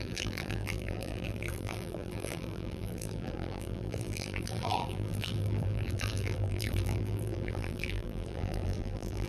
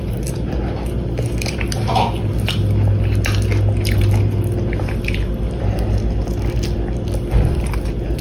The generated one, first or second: first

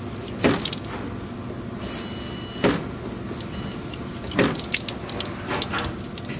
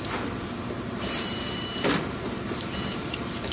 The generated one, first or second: second